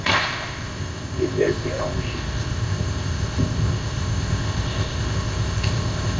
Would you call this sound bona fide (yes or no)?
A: no